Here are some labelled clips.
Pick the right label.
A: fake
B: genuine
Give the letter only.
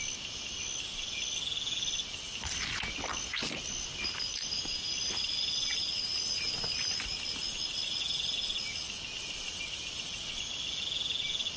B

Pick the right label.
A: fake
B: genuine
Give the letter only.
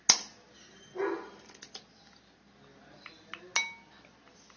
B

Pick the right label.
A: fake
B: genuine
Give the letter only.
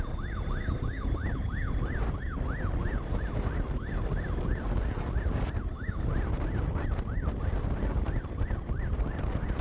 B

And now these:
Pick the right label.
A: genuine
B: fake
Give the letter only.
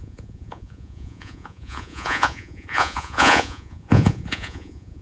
B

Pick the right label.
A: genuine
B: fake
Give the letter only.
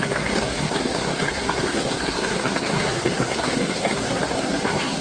B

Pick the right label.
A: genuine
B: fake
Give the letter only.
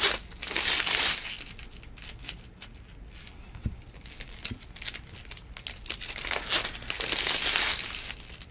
A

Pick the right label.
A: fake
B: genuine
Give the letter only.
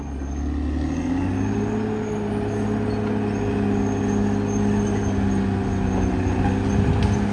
B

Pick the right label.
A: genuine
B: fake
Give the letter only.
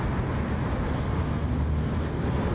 A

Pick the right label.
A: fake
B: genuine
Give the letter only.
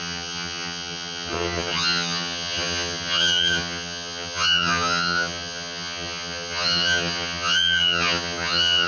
A